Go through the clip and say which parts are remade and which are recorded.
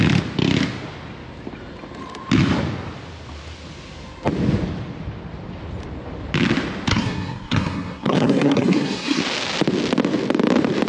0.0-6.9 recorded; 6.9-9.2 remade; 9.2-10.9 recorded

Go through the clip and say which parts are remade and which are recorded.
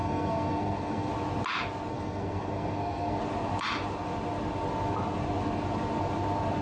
0.0-1.1 remade; 1.1-1.9 recorded; 1.9-3.2 remade; 3.2-6.6 recorded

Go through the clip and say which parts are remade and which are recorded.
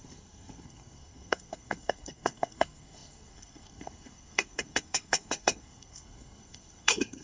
0.0-7.2 remade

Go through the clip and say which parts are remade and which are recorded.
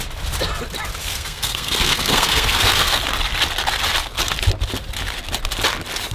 0.0-1.0 recorded; 1.0-3.0 remade; 3.0-6.1 recorded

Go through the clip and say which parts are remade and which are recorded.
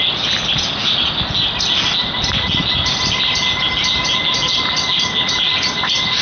0.0-6.2 recorded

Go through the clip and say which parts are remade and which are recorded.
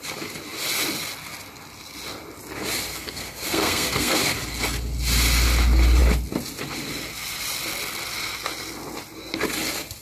0.0-2.9 recorded; 2.9-4.2 remade; 4.2-10.0 recorded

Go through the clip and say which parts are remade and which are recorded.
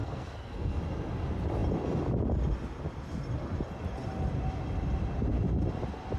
0.0-0.8 remade; 0.8-6.2 recorded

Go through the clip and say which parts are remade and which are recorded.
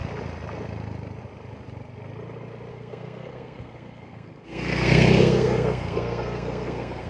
0.0-2.7 recorded; 2.7-7.1 remade